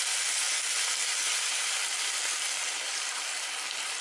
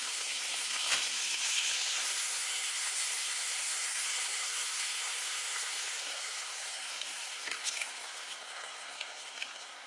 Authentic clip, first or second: first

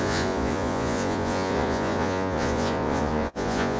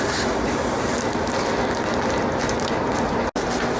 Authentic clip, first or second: second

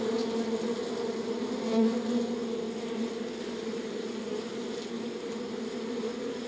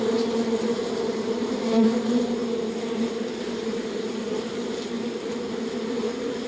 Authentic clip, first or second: first